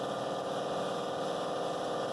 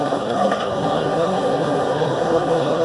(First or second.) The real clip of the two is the first